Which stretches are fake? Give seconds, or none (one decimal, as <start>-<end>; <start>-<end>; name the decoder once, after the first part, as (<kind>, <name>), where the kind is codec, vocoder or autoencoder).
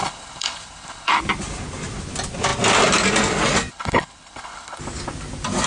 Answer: 0.0-1.2 (codec, HILCodec); 3.7-4.8